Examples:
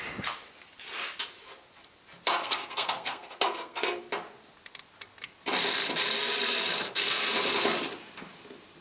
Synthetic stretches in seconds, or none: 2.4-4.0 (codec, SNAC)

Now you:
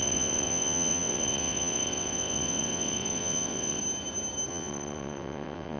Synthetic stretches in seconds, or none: 0.0-3.8 (vocoder, WaveNeXt); 4.5-5.8

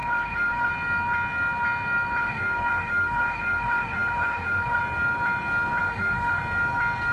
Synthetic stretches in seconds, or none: 0.0-0.7 (autoencoder, DAC-VAE); 2.2-4.8; 5.8-6.4

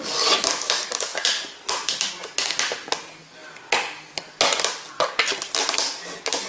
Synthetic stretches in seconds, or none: none

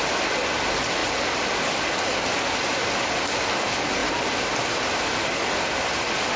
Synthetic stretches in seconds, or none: none